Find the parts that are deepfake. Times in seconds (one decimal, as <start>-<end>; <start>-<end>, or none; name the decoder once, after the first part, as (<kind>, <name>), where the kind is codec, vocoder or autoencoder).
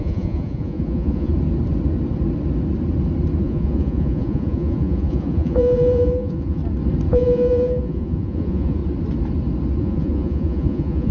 0.0-1.3 (vocoder, Vocos); 3.4-6.6; 7.1-8.8; 9.8-11.1